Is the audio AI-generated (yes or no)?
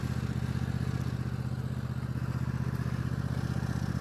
no